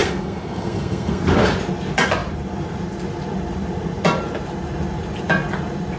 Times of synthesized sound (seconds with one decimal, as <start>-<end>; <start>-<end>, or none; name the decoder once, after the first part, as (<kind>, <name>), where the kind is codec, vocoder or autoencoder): 0.0-1.2 (codec, SNAC)

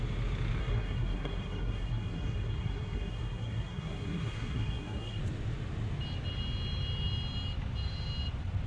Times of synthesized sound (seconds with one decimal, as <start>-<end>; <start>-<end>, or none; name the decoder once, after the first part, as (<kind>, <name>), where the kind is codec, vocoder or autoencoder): 0.6-5.2 (codec, SNAC)

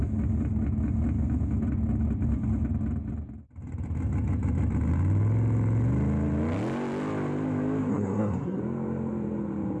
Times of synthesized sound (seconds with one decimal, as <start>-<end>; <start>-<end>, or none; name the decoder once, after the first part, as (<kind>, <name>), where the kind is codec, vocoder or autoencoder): 7.9-8.6 (codec, SNAC)

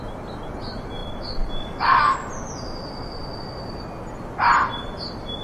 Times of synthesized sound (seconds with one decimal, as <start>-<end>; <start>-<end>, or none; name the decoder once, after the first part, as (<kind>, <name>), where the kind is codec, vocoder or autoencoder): none

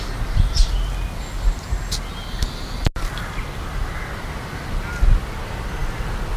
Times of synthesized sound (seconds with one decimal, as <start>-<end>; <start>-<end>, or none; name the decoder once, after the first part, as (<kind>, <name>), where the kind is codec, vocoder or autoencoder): none

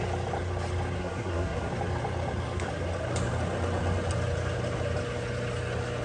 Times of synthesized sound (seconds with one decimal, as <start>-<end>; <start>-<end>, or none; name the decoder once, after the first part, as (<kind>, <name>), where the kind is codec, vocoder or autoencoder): 1.0-1.7 (codec, SNAC)

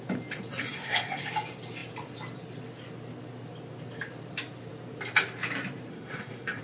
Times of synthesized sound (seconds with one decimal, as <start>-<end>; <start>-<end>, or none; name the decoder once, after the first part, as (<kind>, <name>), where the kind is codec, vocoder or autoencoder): 0.5-1.2 (codec, SNAC); 5.9-6.6